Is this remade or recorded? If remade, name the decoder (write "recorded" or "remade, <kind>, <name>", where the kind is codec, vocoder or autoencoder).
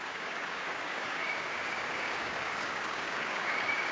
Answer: remade, codec, DAC